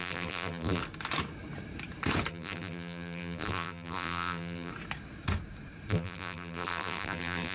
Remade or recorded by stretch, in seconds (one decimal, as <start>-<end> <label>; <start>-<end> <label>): 0.0-0.8 remade; 0.8-2.3 recorded; 2.3-4.7 remade; 4.7-5.9 recorded; 5.9-7.5 remade

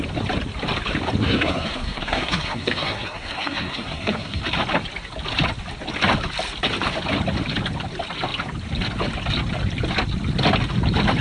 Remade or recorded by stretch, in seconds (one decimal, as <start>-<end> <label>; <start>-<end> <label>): 0.0-1.2 recorded; 1.2-4.4 remade; 4.4-11.2 recorded

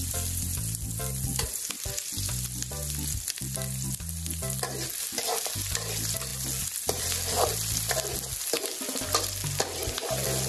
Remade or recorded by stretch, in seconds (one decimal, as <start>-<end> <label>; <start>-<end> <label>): 0.0-10.5 recorded